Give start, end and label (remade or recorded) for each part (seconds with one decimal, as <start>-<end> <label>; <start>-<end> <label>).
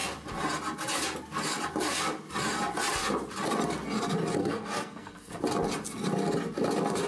0.0-4.4 recorded; 4.4-5.4 remade; 5.4-7.1 recorded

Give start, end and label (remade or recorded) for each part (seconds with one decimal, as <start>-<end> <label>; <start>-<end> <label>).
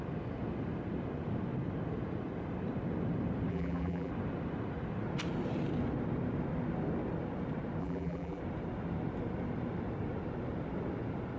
0.0-3.5 recorded; 3.5-4.1 remade; 4.1-7.8 recorded; 7.8-8.4 remade; 8.4-11.4 recorded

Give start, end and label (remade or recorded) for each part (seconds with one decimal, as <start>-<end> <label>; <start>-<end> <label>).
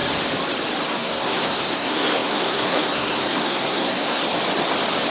0.0-0.9 recorded; 0.9-4.2 remade; 4.2-5.1 recorded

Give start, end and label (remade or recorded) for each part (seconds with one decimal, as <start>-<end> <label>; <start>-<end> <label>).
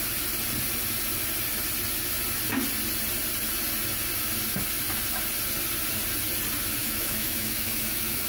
0.0-6.8 recorded; 6.8-8.3 remade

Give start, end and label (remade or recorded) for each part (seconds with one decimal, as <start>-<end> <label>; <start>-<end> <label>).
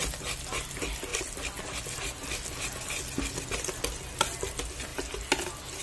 0.0-5.8 recorded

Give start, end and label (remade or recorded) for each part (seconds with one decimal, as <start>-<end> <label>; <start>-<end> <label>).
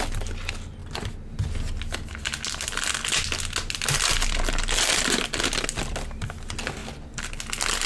0.0-7.9 recorded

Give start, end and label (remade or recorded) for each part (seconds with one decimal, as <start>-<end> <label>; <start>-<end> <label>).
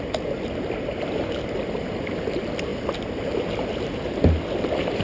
0.0-5.0 recorded